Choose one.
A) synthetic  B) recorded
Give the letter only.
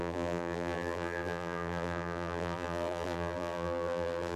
A